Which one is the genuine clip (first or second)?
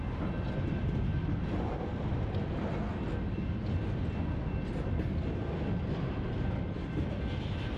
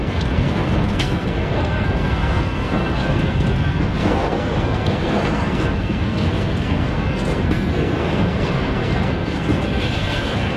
first